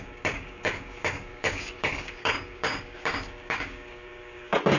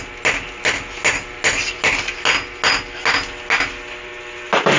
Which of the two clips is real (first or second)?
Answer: second